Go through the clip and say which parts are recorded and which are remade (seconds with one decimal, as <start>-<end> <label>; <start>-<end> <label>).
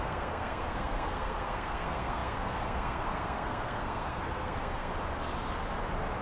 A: 0.0-4.9 remade; 4.9-6.2 recorded